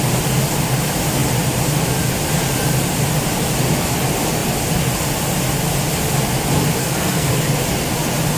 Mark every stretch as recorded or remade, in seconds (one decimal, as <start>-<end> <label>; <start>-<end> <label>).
0.0-6.8 recorded; 6.8-7.4 remade; 7.4-8.4 recorded